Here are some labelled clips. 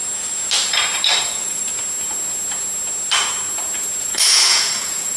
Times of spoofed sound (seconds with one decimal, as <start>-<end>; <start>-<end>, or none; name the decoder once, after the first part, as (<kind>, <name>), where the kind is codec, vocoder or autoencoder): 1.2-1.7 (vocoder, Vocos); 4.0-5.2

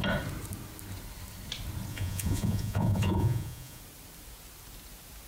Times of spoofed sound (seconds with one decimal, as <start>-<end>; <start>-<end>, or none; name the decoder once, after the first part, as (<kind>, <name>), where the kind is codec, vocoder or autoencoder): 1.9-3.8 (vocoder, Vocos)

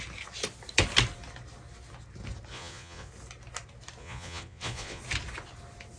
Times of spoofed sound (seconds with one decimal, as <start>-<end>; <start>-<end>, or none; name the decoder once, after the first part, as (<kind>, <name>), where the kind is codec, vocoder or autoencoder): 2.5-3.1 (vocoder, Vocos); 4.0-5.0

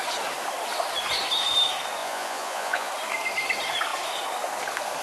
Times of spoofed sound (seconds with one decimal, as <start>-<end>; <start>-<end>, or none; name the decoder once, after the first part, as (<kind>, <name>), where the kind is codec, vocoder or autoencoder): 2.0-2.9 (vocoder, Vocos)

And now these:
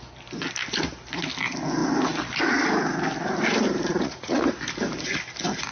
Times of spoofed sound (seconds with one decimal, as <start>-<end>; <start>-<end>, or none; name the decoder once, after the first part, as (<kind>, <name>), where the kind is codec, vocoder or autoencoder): 3.9-4.5 (vocoder, Vocos)

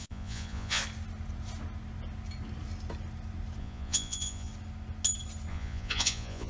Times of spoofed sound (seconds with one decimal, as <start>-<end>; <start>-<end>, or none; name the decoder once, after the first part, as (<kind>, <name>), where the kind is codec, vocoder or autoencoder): 0.0-0.8 (vocoder, Vocos); 3.6-4.5; 5.5-6.5